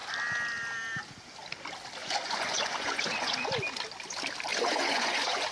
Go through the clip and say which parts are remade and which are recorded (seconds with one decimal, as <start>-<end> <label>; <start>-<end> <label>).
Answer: 0.0-2.0 recorded; 2.0-3.5 remade; 3.5-4.5 recorded; 4.5-5.5 remade